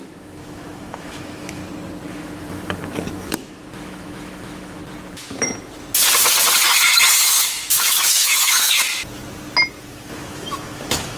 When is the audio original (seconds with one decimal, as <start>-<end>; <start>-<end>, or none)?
1.6-2.1; 4.8-7.4; 8.9-9.8